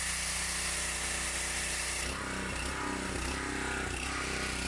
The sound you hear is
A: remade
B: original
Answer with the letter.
B